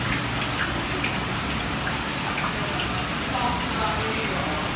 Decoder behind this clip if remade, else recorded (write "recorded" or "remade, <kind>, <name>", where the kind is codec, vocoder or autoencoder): recorded